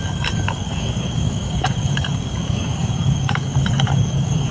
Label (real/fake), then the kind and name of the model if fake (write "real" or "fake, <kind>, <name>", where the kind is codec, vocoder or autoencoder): fake, codec, DAC